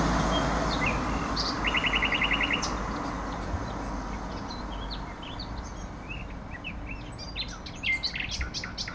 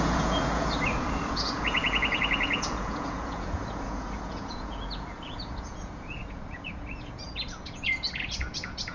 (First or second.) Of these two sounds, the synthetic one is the second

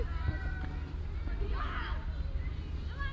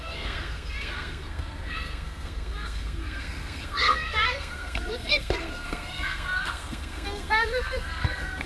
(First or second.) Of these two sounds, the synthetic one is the second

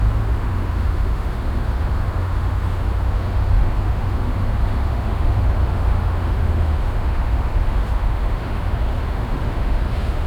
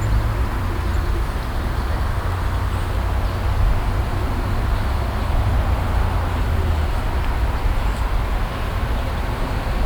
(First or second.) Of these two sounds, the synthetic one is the first